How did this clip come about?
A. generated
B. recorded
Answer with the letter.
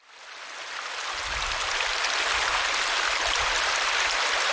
B